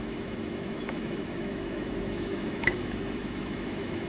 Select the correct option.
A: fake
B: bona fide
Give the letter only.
A